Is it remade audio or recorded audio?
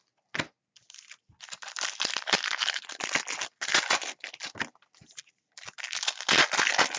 recorded